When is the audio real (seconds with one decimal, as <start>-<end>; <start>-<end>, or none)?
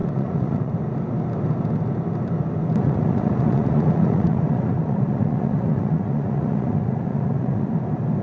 0.7-2.8; 7.7-8.2